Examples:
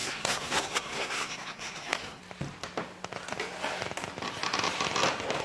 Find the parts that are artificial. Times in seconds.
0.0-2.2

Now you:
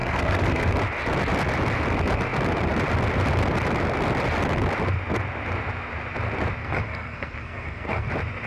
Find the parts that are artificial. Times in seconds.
0.0-0.7; 6.6-8.1

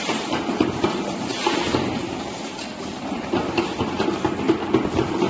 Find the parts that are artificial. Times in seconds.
0.0-1.3; 2.8-3.7

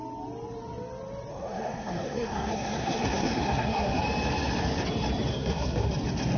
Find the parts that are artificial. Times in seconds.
1.3-4.0; 5.3-5.9